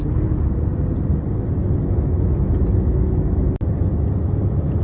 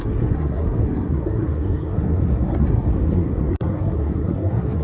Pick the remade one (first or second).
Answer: second